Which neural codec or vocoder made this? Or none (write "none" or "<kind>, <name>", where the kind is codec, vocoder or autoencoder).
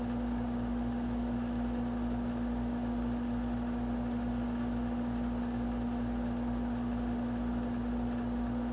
none